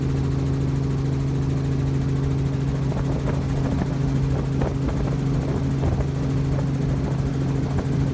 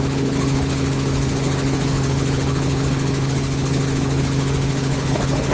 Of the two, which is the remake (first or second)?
second